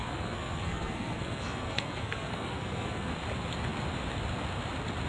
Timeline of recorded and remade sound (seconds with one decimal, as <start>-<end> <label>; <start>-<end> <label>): 0.0-3.1 remade; 3.1-5.1 recorded